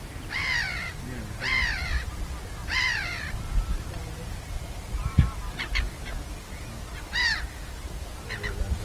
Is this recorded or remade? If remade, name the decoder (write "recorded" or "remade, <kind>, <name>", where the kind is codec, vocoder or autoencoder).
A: recorded